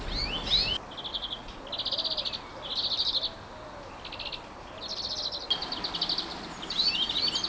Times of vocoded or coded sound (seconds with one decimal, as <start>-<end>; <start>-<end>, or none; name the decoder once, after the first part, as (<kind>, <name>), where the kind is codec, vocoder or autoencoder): 1.1-1.6 (vocoder, Vocos)